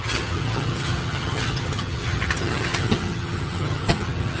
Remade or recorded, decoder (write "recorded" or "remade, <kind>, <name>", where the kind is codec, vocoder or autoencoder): remade, vocoder, HiFi-GAN